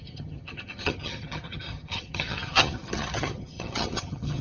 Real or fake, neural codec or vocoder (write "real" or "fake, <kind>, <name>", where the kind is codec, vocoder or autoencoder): fake, vocoder, HiFi-GAN